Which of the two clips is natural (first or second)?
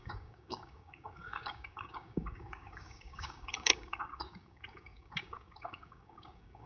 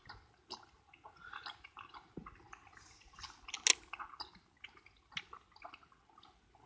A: second